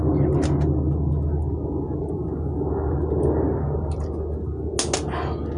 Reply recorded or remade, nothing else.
recorded